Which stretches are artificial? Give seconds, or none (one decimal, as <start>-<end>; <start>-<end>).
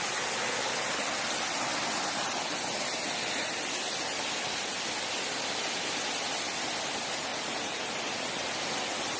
7.3-7.8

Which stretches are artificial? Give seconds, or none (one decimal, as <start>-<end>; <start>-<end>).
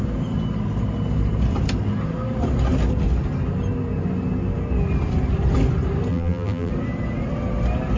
6.1-6.7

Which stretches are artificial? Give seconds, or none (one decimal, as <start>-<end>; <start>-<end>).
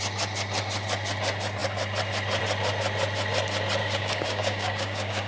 3.8-5.3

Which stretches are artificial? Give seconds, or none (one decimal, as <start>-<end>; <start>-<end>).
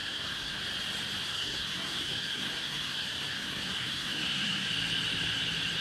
0.0-0.6; 1.2-4.7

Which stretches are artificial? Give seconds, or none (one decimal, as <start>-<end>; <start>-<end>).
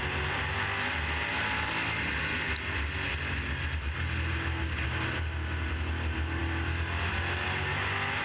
none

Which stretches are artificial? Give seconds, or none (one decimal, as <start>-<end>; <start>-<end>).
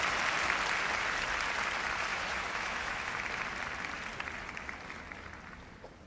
2.1-3.1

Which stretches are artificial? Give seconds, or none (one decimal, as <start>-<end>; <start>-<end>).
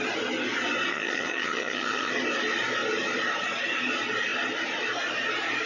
0.9-2.1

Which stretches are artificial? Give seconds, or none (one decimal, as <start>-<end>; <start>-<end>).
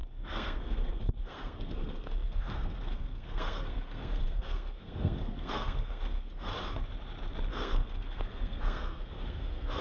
0.0-6.5; 7.5-9.8